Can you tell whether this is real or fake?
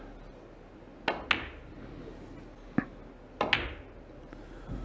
real